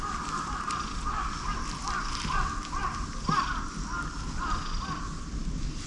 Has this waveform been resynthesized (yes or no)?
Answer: no